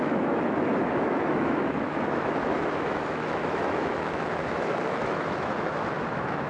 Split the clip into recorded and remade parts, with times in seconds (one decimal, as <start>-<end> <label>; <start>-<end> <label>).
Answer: 0.0-6.5 remade